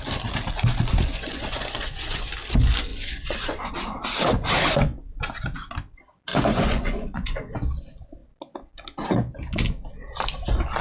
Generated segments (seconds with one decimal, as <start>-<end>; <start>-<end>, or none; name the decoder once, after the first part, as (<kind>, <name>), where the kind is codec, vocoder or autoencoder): 1.1-2.3 (vocoder, Vocos); 2.9-3.7; 6.3-7.5